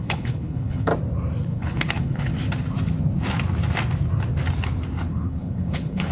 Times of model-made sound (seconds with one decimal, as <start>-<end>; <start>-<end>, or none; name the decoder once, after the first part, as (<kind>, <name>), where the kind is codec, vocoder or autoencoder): 0.0-0.9 (codec, HILCodec); 1.4-2.3; 5.1-6.1